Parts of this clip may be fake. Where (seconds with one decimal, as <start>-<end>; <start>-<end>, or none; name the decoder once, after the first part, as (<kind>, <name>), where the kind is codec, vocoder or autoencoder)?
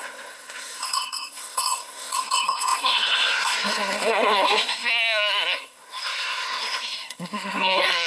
0.0-8.1 (codec, SNAC)